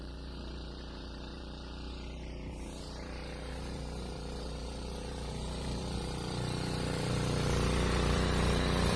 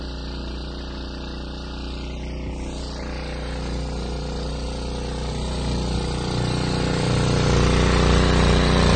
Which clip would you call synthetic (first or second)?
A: first